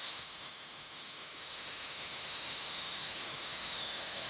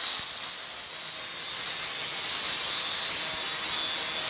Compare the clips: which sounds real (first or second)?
second